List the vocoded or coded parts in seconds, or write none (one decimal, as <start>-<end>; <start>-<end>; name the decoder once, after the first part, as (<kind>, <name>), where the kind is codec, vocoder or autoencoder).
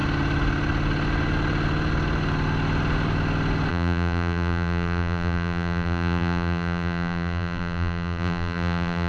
3.7-9.1 (vocoder, BigVGAN v2)